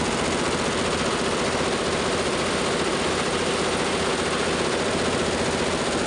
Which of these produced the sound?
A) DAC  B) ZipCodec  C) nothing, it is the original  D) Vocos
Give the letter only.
C